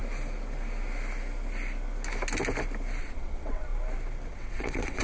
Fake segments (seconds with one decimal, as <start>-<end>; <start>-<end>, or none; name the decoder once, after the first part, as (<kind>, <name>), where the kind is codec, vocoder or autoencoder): 3.0-3.7 (vocoder, WaveNeXt); 4.3-5.0